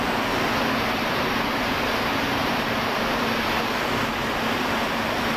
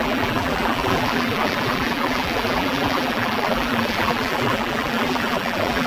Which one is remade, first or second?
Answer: second